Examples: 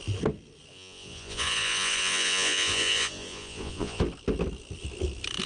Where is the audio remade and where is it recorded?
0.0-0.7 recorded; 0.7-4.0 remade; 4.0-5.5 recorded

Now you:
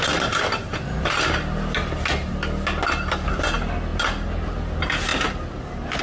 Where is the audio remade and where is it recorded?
0.0-6.0 recorded

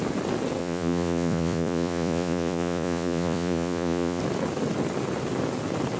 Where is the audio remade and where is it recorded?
0.0-0.6 recorded; 0.6-4.2 remade; 4.2-6.0 recorded

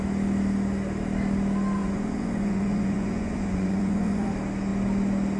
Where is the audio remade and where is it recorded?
0.0-1.8 recorded; 1.8-4.3 remade; 4.3-5.4 recorded